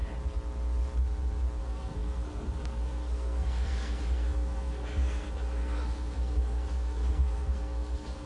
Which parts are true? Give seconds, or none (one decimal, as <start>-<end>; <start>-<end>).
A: 0.0-1.6